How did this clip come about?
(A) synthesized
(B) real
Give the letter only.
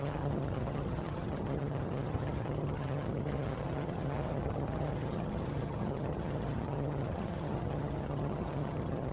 A